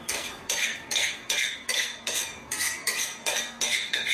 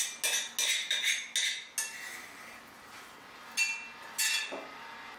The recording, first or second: second